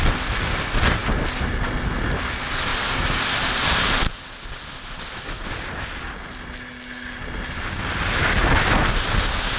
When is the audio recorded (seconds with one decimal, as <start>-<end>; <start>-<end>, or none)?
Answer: 0.0-2.7; 4.2-9.6